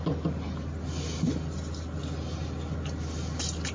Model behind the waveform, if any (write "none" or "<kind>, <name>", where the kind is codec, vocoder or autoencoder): none